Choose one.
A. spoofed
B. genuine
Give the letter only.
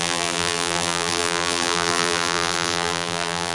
A